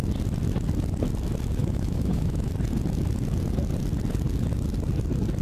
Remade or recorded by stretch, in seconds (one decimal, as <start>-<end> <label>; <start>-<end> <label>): 0.0-1.6 recorded; 1.6-2.5 remade; 2.5-5.4 recorded

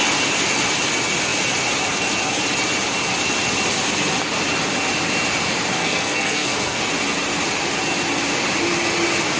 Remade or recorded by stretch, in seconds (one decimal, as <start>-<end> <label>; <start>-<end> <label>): 0.0-5.8 recorded; 5.8-6.8 remade; 6.8-9.4 recorded

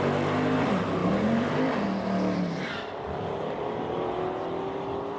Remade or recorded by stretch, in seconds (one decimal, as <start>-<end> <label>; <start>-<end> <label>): 0.0-1.0 recorded; 1.0-4.1 remade; 4.1-5.2 recorded

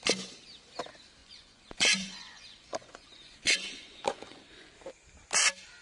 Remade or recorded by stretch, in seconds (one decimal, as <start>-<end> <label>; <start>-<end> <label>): 0.0-1.2 recorded; 1.2-4.7 remade; 4.7-5.8 recorded

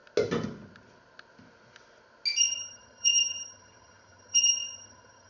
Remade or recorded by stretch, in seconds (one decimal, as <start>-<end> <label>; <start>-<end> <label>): 0.0-2.4 recorded; 2.4-5.3 remade

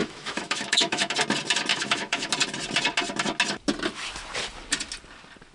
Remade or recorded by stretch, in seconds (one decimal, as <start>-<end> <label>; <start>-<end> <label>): 0.0-1.1 remade; 1.1-1.7 recorded; 1.7-2.3 remade; 2.3-5.5 recorded